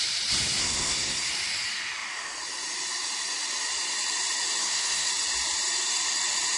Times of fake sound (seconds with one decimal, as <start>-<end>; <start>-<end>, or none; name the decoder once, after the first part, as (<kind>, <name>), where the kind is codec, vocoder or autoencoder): 0.6-1.3 (codec, SNAC); 4.6-5.1